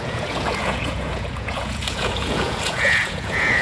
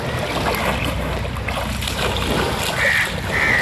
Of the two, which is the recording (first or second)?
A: second